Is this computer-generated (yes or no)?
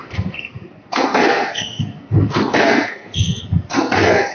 yes